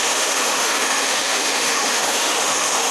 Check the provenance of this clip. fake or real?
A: fake